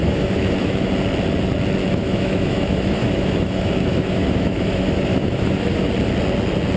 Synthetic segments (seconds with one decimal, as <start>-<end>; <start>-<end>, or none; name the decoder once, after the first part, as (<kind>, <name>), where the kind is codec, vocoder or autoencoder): 0.0-0.9 (autoencoder, DAC-VAE); 1.8-5.9